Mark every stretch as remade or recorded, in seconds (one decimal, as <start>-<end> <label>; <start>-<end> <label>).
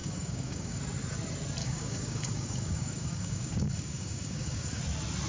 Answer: 0.0-0.8 remade; 0.8-1.6 recorded; 1.6-4.8 remade; 4.8-5.3 recorded